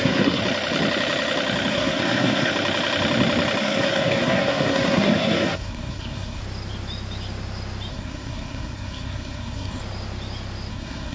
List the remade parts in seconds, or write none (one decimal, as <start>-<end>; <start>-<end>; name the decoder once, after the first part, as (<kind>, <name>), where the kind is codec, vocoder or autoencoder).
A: 0.0-0.4 (codec, SNAC); 1.7-2.5; 3.6-6.4; 7.9-9.8; 10.7-11.1